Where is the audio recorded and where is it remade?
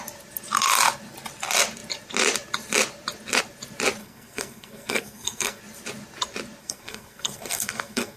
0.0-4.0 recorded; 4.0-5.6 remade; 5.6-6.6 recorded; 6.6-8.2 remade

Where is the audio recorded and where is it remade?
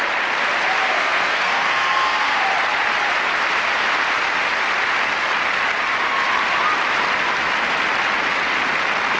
0.0-0.9 recorded; 0.9-2.4 remade; 2.4-9.2 recorded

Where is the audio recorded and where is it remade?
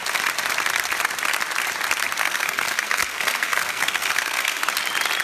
0.0-2.2 recorded; 2.2-4.7 remade; 4.7-5.2 recorded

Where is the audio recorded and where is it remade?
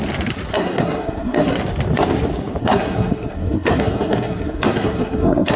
0.0-0.5 recorded; 0.5-1.6 remade; 1.6-2.6 recorded; 2.6-5.6 remade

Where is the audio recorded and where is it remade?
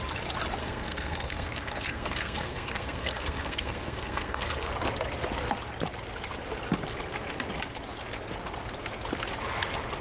0.0-0.6 recorded; 0.6-4.7 remade; 4.7-10.0 recorded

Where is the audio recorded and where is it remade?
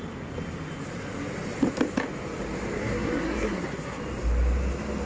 0.0-2.8 recorded; 2.8-4.0 remade; 4.0-5.1 recorded